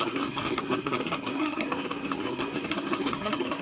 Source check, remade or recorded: remade